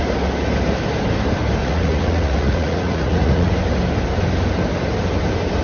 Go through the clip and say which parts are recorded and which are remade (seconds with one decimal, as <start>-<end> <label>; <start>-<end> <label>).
0.0-1.6 recorded; 1.6-3.5 remade; 3.5-5.6 recorded